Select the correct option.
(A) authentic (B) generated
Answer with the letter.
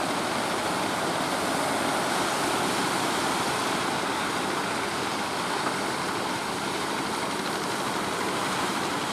A